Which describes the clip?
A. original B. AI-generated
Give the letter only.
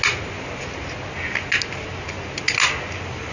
A